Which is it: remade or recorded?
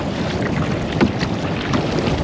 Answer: recorded